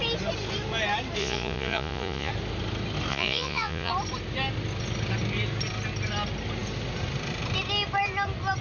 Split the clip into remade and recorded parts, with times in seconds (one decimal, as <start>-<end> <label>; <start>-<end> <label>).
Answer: 0.0-1.2 recorded; 1.2-2.3 remade; 2.3-3.1 recorded; 3.1-3.9 remade; 3.9-8.6 recorded